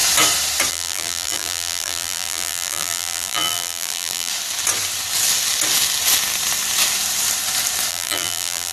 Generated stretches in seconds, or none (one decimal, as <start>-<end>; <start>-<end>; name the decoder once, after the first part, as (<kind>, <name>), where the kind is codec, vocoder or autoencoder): 0.7-4.3 (vocoder, BigVGAN v2); 7.9-8.7